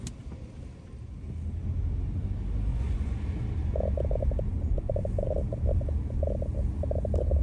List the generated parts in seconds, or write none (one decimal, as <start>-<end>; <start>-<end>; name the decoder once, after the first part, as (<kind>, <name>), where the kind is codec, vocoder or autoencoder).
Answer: 2.7-3.2 (vocoder, Vocos); 4.5-5.3